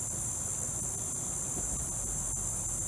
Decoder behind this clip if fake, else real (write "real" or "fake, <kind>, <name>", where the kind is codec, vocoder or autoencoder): real